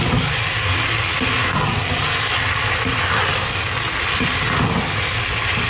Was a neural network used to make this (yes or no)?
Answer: no